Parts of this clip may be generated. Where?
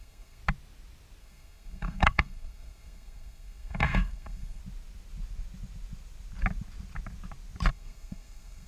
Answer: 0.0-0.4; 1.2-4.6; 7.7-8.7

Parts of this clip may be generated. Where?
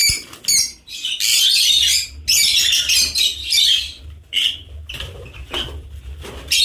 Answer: none